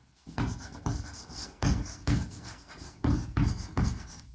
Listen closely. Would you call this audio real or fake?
fake